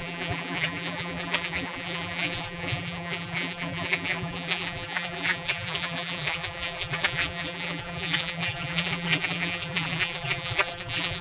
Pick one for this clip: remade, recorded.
remade